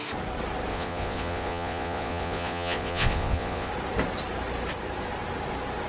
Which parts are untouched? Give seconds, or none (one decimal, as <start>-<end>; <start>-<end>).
0.0-0.7; 3.7-5.9